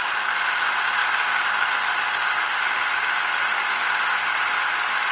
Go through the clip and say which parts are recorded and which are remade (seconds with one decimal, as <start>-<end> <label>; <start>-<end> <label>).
0.0-5.1 recorded